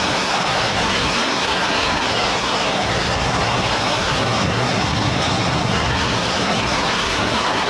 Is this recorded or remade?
remade